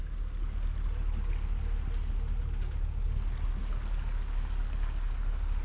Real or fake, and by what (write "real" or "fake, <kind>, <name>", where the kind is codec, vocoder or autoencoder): real